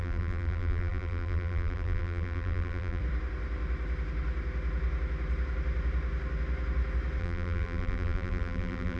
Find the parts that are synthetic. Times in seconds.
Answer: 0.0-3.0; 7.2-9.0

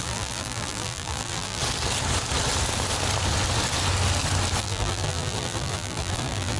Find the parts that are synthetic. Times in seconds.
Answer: 0.0-1.6; 4.6-6.6

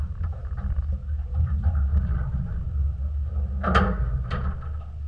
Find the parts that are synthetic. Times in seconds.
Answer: 0.0-0.4; 1.3-1.9